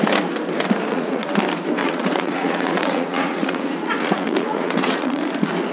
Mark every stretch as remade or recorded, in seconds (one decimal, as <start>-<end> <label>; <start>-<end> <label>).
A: 0.0-0.9 recorded; 0.9-1.4 remade; 1.4-1.8 recorded; 1.8-5.2 remade; 5.2-5.7 recorded